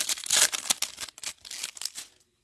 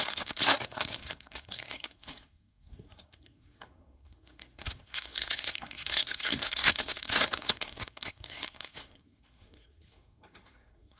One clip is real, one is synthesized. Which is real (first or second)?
first